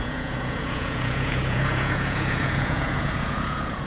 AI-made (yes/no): yes